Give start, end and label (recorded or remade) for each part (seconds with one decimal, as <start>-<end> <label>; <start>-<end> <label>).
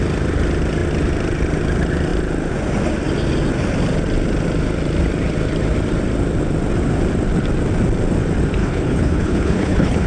0.0-8.6 recorded; 8.6-10.1 remade